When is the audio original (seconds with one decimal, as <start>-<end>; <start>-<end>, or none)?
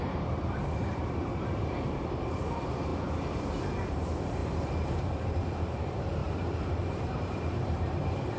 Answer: 2.9-3.9